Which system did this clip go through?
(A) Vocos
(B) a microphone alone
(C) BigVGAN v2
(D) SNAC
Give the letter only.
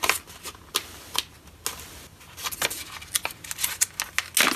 B